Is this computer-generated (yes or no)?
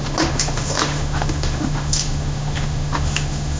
yes